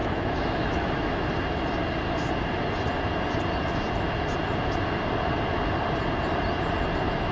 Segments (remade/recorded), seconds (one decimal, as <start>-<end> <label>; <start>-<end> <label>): 0.0-1.3 remade; 1.3-7.3 recorded